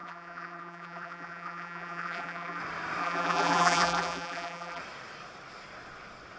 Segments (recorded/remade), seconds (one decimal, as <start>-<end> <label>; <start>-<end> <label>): 0.0-2.6 remade; 2.6-3.0 recorded; 3.0-4.8 remade; 4.8-6.4 recorded